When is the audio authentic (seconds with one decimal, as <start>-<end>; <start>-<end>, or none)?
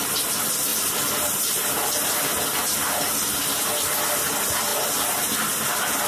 0.0-6.1